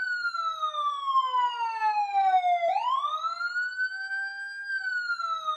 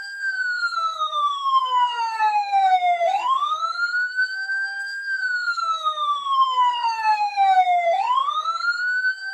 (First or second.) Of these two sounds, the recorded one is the first